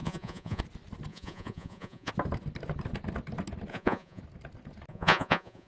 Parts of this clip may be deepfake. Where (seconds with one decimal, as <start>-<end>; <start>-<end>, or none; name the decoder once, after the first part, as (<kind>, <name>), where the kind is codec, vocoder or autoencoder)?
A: 0.0-0.6 (vocoder, Vocos); 1.1-2.1; 3.7-4.2; 4.9-5.7